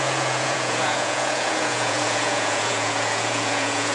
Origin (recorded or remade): remade